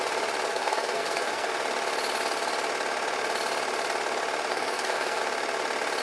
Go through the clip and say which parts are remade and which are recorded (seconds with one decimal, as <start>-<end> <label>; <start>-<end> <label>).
0.0-0.5 recorded; 0.5-1.5 remade; 1.5-4.5 recorded; 4.5-5.2 remade; 5.2-6.0 recorded